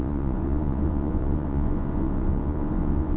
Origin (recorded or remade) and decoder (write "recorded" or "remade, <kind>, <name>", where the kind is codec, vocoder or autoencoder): remade, vocoder, Vocos